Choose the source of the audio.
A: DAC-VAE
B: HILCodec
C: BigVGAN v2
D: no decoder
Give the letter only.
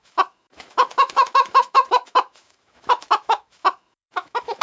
A